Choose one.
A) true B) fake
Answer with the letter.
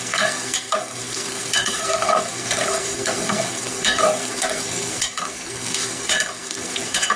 B